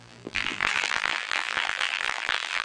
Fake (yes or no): yes